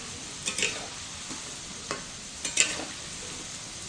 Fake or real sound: real